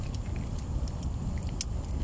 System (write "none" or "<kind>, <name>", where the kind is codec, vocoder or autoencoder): none